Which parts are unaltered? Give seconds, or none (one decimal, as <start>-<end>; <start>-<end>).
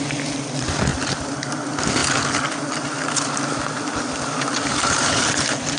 0.0-0.9; 1.5-4.7; 5.3-5.8